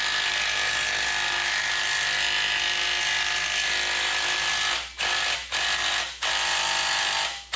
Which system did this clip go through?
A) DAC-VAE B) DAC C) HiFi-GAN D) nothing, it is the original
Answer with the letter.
D